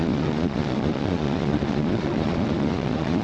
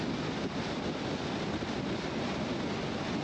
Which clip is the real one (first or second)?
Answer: second